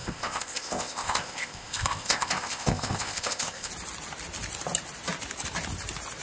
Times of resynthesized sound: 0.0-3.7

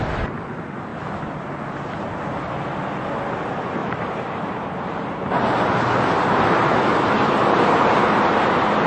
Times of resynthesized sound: 3.8-8.9

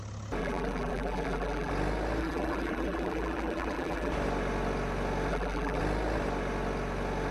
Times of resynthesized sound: 0.4-1.7; 2.2-4.1; 5.3-5.8

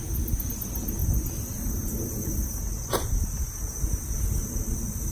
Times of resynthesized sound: none

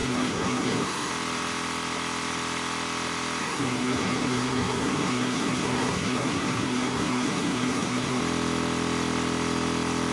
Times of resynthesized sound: 0.0-1.1; 3.4-8.2

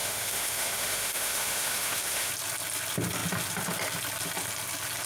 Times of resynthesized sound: 0.0-2.3

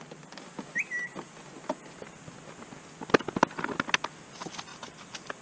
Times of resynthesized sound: 4.7-5.4

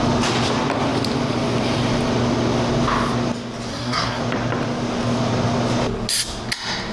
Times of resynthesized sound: 3.7-4.2